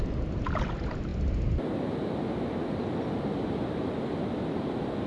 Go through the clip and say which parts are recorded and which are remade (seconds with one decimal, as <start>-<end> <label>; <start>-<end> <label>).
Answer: 0.0-5.1 recorded

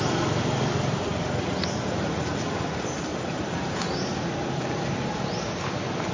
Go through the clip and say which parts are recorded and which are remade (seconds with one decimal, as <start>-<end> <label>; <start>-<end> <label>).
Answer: 0.0-3.1 recorded; 3.1-5.3 remade; 5.3-6.1 recorded

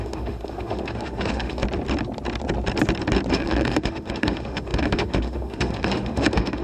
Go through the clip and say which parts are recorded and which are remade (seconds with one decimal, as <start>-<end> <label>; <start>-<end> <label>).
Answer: 0.0-1.6 remade; 1.6-3.3 recorded; 3.3-6.6 remade

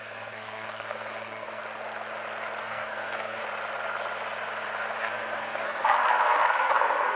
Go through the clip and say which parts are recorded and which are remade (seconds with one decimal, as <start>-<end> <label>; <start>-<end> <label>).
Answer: 0.0-1.6 remade; 1.6-2.6 recorded; 2.6-3.4 remade; 3.4-5.0 recorded; 5.0-7.2 remade

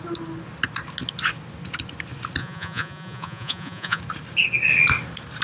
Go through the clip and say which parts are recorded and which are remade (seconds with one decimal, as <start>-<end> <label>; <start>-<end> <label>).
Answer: 0.0-2.4 recorded; 2.4-4.0 remade; 4.0-5.4 recorded

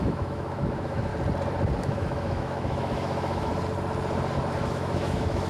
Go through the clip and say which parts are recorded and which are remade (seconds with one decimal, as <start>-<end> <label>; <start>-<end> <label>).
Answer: 0.0-1.1 remade; 1.1-1.8 recorded; 1.8-3.5 remade; 3.5-4.6 recorded; 4.6-5.5 remade